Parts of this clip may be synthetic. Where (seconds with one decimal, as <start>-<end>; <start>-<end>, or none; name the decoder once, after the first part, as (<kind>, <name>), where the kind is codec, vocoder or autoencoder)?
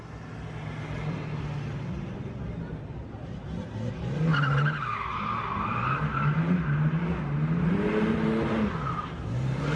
none